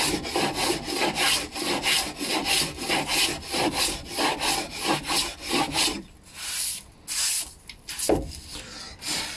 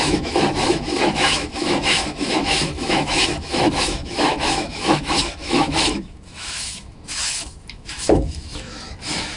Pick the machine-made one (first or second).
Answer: second